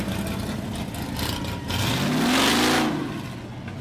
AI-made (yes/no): no